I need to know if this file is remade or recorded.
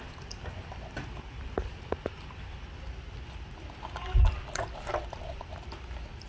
recorded